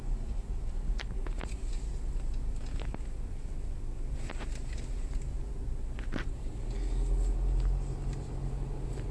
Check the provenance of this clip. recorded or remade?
recorded